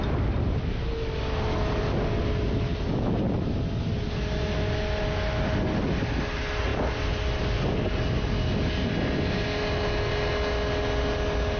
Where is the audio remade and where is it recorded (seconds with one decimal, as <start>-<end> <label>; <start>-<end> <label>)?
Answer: 0.0-11.6 recorded